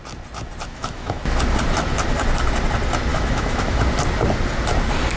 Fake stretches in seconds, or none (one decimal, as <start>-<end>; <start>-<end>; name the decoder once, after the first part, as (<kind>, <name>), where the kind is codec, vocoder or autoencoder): 0.7-1.2 (autoencoder, DAC-VAE); 3.1-3.8